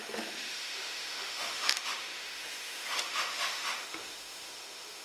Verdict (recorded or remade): remade